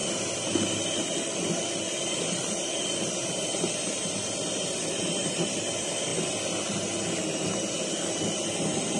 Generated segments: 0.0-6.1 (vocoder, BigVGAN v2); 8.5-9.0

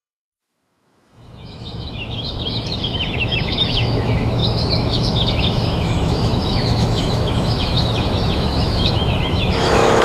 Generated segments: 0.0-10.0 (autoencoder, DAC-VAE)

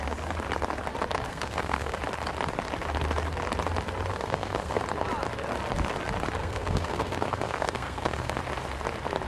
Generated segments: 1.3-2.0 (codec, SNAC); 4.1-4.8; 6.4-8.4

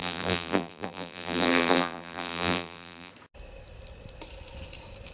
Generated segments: 0.0-3.1 (vocoder, BigVGAN v2)